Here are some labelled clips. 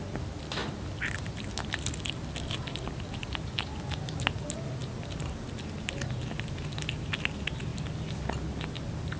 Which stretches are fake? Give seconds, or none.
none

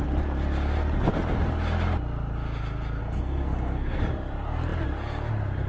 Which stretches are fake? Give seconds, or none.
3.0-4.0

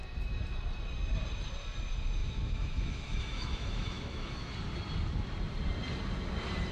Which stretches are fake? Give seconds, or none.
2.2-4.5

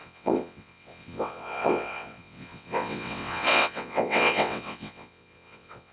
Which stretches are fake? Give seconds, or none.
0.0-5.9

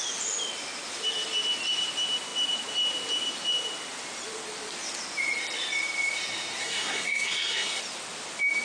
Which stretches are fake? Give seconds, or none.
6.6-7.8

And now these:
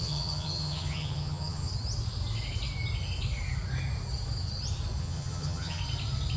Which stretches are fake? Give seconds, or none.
0.0-1.7; 5.0-5.8

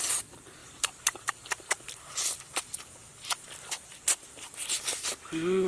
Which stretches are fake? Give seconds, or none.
0.6-4.0

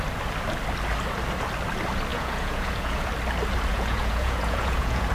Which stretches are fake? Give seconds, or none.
2.1-3.1; 3.7-5.1